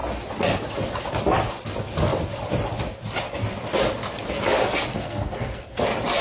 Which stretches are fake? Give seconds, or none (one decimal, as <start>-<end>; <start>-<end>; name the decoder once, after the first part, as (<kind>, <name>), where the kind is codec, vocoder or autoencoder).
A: 4.9-5.8 (codec, SNAC)